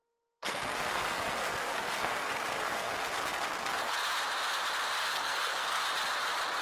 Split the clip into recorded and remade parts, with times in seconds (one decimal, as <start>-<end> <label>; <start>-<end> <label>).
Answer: 0.0-4.0 remade; 4.0-5.0 recorded; 5.0-5.8 remade; 5.8-6.6 recorded